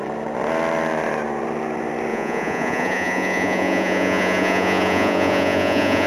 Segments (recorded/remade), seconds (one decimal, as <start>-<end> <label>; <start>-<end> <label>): 0.0-2.1 recorded; 2.1-6.1 remade